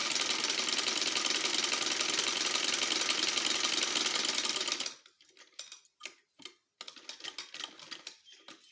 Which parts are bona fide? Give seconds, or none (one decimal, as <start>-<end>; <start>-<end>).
0.0-8.7